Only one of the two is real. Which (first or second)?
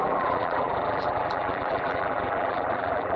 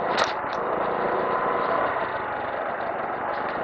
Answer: second